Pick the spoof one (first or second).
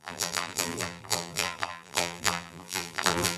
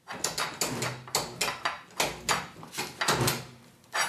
first